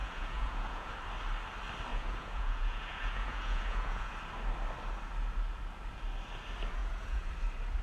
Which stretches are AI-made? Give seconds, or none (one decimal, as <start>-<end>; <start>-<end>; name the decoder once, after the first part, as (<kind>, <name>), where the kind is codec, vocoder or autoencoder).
0.0-0.9 (vocoder, Vocos); 1.9-4.1; 6.8-7.3